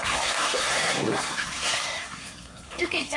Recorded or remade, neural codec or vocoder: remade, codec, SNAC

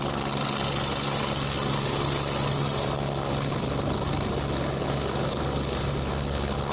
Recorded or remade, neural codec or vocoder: recorded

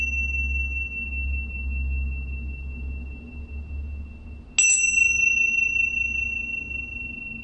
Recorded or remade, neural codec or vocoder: recorded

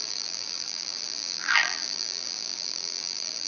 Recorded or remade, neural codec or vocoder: remade, vocoder, BigVGAN v2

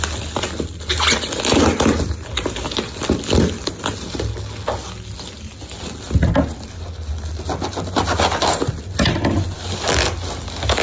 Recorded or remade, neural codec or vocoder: recorded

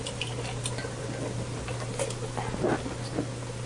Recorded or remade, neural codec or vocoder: recorded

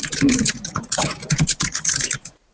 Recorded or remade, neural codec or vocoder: remade, vocoder, Vocos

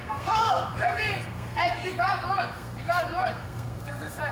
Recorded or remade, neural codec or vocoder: remade, codec, SNAC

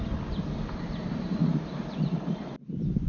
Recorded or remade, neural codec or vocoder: remade, vocoder, BigVGAN v2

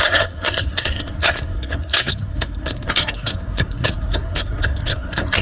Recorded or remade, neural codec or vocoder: remade, codec, SNAC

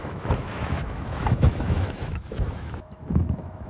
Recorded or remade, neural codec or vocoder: remade, autoencoder, DAC-VAE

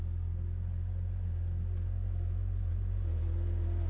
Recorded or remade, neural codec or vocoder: recorded